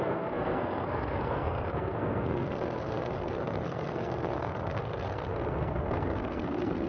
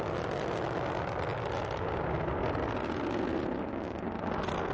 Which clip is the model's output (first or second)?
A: first